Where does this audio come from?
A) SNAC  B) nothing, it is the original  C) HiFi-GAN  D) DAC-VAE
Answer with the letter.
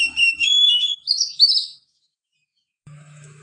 D